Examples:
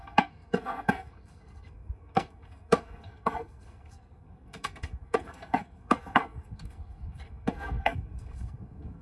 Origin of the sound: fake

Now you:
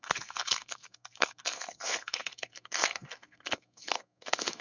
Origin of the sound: fake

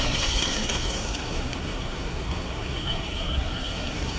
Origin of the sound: fake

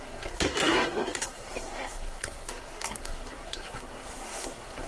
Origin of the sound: fake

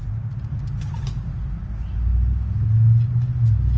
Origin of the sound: real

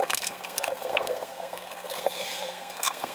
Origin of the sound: fake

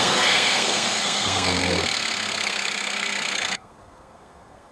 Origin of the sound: fake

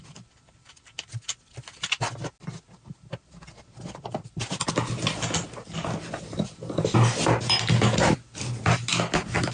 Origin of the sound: real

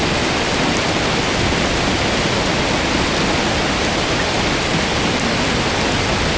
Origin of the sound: real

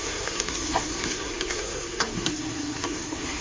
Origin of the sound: fake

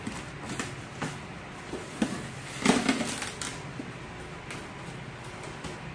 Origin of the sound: real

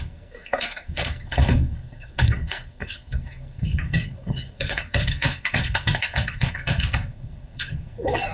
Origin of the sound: fake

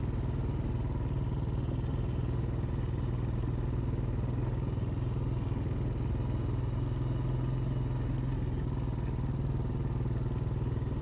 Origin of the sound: real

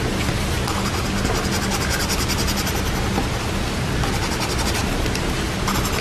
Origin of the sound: real